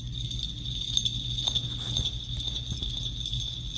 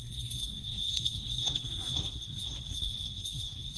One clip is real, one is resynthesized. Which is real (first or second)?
first